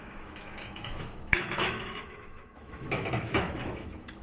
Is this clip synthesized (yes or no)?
yes